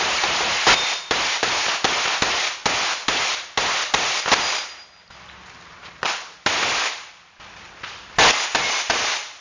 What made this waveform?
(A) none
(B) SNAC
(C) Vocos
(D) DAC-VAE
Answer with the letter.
A